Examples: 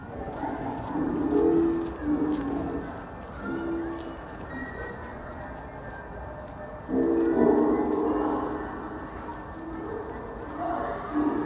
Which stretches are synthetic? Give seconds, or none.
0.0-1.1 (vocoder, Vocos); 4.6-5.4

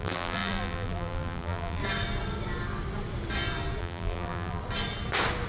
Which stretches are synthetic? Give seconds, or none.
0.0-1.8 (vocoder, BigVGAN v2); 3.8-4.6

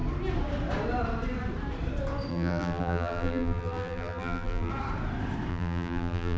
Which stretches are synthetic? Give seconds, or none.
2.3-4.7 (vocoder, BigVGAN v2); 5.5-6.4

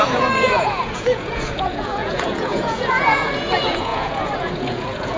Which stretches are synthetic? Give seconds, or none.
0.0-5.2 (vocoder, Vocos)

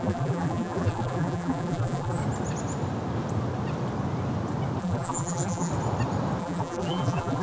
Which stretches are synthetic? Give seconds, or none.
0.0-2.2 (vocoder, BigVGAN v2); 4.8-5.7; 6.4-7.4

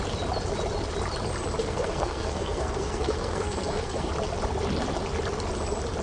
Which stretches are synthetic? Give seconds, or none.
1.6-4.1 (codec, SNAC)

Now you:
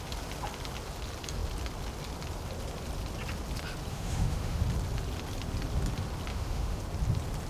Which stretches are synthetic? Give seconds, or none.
3.9-4.6 (autoencoder, DAC-VAE); 6.3-6.8

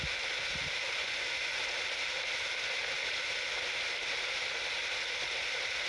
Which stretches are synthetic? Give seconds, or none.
1.0-1.6 (vocoder, Vocos)